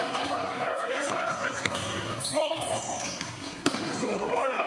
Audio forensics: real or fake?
fake